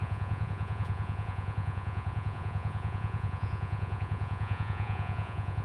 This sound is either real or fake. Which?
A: fake